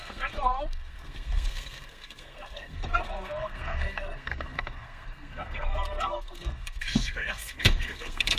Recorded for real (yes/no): no